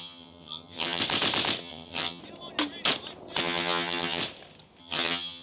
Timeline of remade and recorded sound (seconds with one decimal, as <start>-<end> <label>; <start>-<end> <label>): 0.0-1.0 remade; 1.0-1.6 recorded; 1.6-2.2 remade; 2.2-3.4 recorded; 3.4-4.2 remade; 4.2-4.8 recorded; 4.8-5.4 remade